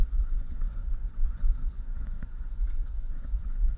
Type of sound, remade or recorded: remade